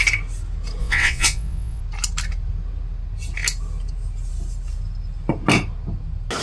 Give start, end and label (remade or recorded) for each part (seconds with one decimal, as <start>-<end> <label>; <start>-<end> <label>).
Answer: 0.0-0.8 recorded; 0.8-1.8 remade; 1.8-6.4 recorded